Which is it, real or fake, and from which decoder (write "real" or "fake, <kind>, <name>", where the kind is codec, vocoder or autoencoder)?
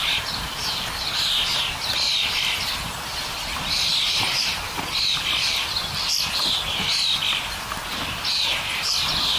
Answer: real